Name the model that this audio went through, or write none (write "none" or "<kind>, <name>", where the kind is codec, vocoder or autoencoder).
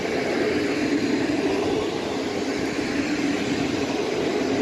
none